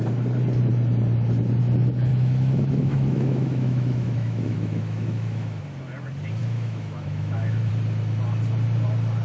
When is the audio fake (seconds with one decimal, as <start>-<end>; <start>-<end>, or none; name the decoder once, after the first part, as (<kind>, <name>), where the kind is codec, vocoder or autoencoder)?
2.1-5.6 (autoencoder, DAC-VAE); 6.4-7.7